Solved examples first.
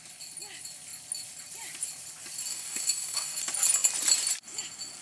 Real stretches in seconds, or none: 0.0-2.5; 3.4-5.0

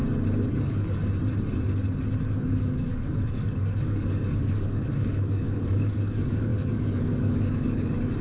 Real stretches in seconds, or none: 0.0-0.5; 1.0-2.2

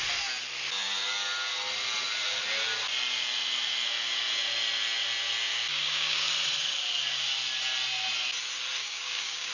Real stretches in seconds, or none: 0.0-5.7; 6.3-8.8

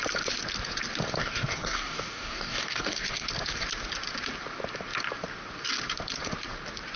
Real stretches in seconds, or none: 0.0-1.2; 3.3-7.0